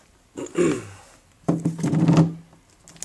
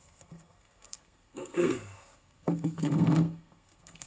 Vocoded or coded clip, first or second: second